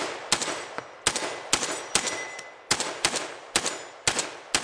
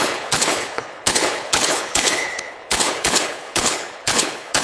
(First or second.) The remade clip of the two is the second